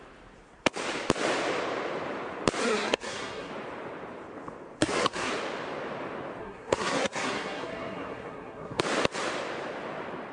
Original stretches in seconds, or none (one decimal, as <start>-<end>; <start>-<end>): 0.0-2.6; 3.5-4.8; 5.3-6.4; 8.8-10.3